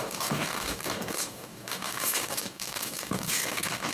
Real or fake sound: fake